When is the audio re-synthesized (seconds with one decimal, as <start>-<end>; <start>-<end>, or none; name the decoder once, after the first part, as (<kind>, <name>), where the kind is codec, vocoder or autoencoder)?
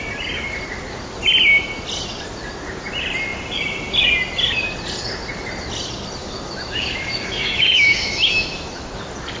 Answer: 6.2-8.7 (autoencoder, DAC-VAE)